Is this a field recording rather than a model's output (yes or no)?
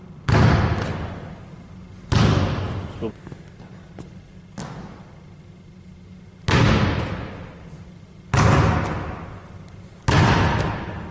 yes